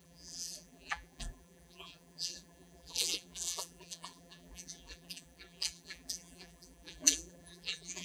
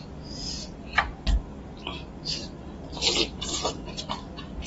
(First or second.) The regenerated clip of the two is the first